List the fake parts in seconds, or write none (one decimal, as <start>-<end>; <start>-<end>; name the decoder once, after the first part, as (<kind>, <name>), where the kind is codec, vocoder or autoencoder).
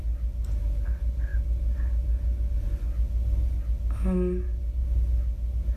none